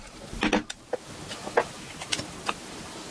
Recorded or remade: recorded